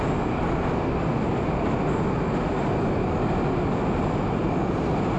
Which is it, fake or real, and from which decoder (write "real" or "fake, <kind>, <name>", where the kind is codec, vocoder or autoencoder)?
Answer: real